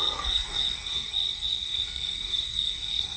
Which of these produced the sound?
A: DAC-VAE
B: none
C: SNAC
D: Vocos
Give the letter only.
C